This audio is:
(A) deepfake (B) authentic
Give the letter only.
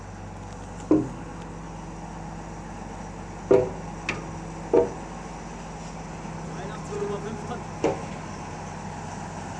B